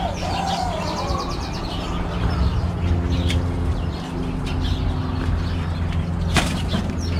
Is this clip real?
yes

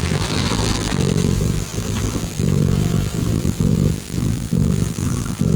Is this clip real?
no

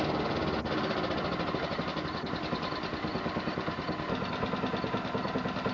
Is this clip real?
yes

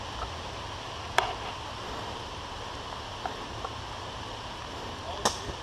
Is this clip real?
yes